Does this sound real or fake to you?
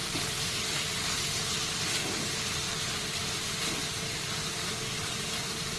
fake